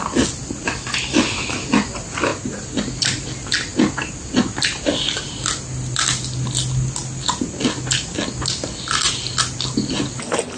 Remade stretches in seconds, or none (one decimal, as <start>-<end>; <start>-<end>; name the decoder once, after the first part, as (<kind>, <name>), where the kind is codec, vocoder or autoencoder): none